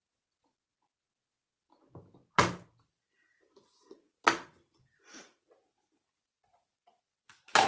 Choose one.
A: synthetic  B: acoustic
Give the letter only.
B